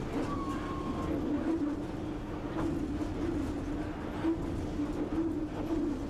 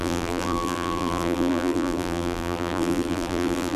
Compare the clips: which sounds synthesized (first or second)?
second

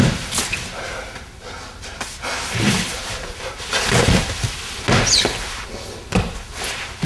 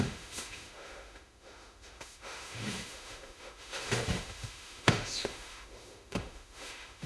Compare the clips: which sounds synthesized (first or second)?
second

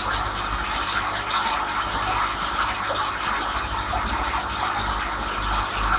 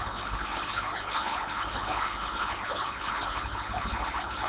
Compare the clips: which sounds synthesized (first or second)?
second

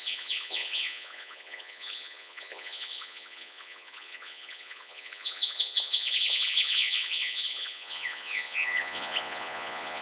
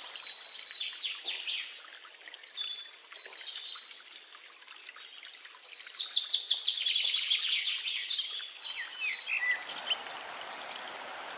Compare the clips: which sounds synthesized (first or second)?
first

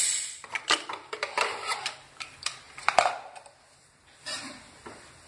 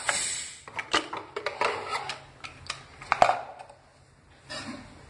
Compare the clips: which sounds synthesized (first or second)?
first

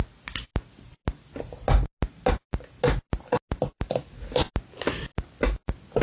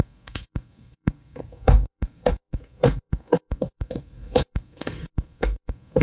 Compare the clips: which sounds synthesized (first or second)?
second